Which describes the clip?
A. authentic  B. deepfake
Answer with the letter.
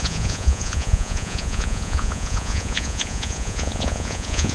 B